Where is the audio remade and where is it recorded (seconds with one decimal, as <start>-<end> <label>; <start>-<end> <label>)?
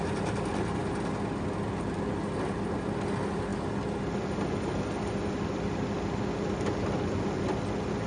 0.0-8.1 recorded